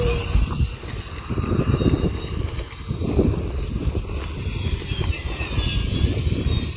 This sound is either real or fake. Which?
real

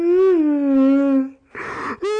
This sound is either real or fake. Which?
real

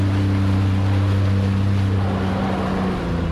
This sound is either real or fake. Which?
real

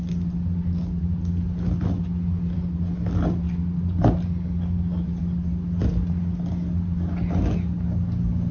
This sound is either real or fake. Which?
real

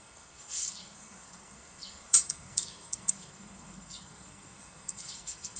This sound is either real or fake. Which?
fake